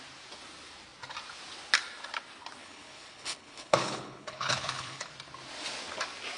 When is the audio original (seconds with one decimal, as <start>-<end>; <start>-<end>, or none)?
0.0-2.6; 5.1-6.4